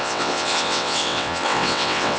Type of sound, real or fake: fake